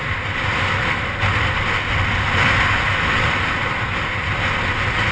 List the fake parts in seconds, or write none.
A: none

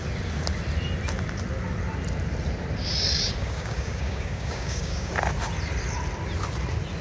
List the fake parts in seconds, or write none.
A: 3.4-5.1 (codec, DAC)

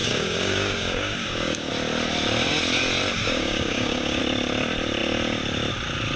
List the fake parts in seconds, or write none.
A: 0.0-1.7 (codec, DAC); 3.1-4.2

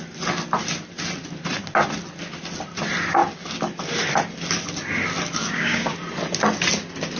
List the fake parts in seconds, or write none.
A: 5.4-5.9 (codec, DAC)

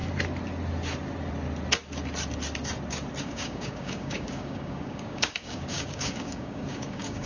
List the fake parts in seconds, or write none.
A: 3.2-7.3 (codec, DAC)

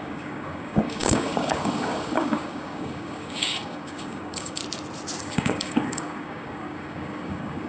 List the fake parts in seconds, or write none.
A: 0.0-4.6 (codec, DAC); 5.2-7.7